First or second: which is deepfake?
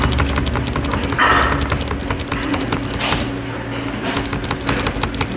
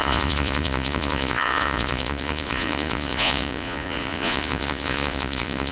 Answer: second